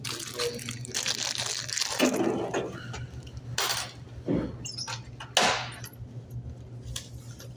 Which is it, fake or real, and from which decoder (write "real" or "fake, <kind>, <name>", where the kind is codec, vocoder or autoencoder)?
real